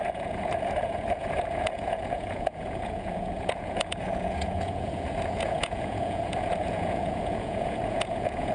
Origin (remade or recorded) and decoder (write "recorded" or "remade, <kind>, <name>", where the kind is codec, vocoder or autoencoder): remade, vocoder, Vocos